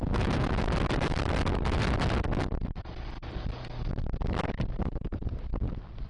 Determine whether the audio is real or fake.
real